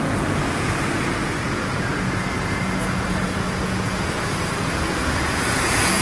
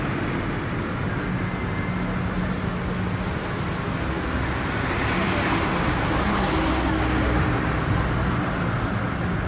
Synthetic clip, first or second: first